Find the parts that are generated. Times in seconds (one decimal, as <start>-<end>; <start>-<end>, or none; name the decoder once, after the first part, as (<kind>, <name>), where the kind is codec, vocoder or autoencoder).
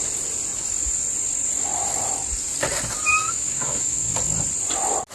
3.2-4.1 (autoencoder, DAC-VAE)